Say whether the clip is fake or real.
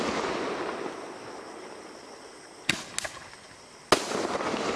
real